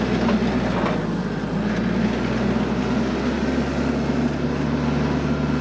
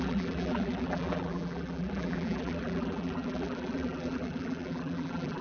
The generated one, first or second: second